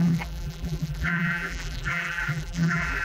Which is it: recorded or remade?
remade